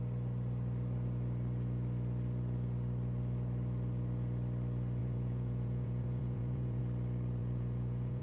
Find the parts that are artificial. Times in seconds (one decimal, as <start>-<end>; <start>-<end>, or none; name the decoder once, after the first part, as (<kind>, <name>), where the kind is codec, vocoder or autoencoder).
5.0-6.8 (vocoder, Vocos); 7.4-8.2